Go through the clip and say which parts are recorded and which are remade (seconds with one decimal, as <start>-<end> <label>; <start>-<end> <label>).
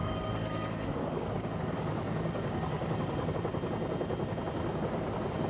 0.0-3.3 remade; 3.3-5.5 recorded